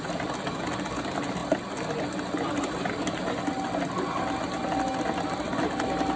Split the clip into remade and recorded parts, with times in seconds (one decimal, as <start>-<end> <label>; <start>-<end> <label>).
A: 0.0-6.2 recorded